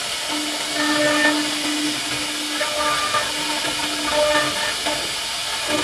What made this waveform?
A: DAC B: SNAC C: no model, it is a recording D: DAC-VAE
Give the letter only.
C